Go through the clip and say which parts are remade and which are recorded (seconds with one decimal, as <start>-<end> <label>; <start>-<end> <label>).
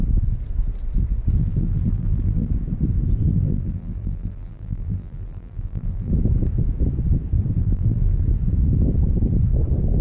0.0-1.4 recorded; 1.4-2.5 remade; 2.5-3.3 recorded; 3.3-6.1 remade; 6.1-7.6 recorded; 7.6-8.2 remade; 8.2-10.0 recorded